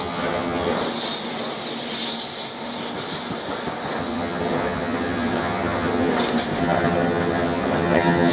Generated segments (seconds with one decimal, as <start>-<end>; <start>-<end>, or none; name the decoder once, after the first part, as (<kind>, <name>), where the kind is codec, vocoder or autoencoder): 0.0-0.7 (vocoder, HiFi-GAN); 4.0-6.1; 6.6-8.3